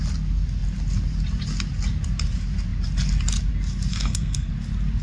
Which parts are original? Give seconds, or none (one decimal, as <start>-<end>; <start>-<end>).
0.0-3.9; 4.5-5.0